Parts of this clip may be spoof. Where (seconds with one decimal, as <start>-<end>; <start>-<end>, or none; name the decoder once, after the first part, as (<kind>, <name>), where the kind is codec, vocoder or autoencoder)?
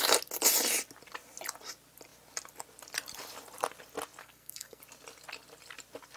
4.2-4.8 (codec, SNAC)